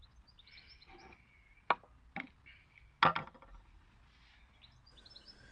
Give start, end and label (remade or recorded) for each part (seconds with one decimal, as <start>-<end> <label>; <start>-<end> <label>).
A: 0.0-5.5 recorded